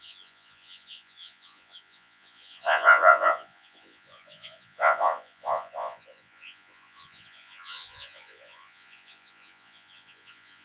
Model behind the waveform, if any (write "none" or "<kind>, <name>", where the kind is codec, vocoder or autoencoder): vocoder, Vocos